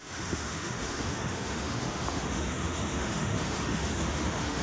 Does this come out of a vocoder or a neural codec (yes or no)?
yes